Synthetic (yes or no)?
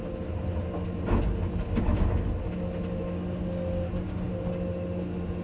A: no